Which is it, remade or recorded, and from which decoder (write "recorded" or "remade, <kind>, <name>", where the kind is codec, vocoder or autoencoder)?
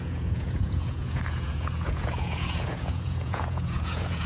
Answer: remade, vocoder, Vocos